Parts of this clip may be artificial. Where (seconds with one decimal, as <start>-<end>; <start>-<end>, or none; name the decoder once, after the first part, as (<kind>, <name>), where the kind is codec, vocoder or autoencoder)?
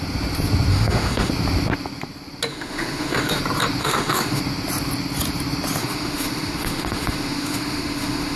0.7-1.3 (autoencoder, DAC-VAE); 2.5-3.4; 3.8-4.4; 5.8-8.4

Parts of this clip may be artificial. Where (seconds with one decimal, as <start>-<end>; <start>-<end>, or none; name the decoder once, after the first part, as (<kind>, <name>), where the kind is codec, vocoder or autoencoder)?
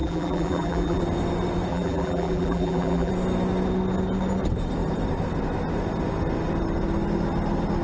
0.0-1.0 (vocoder, BigVGAN v2); 1.7-3.1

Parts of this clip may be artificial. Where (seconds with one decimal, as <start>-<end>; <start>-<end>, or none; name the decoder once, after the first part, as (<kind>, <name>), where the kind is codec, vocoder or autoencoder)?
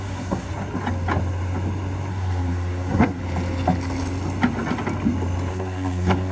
0.0-0.5 (codec, SNAC); 2.1-3.2; 5.5-6.3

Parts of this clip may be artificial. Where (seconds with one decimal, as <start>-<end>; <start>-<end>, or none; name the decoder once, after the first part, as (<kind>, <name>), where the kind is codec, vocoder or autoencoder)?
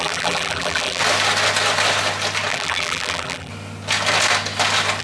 0.0-1.0 (vocoder, BigVGAN v2); 2.5-3.5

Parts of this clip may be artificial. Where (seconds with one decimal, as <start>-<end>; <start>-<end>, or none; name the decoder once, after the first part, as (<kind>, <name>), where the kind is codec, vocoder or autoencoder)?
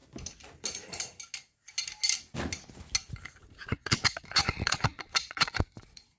3.4-6.2 (vocoder, Vocos)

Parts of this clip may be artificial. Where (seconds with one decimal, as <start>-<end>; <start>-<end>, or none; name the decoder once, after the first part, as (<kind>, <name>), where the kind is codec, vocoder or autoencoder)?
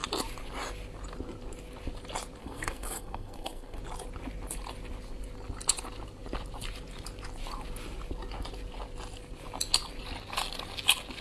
2.4-3.8 (codec, SNAC)